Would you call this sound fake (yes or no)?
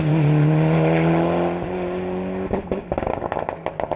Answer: no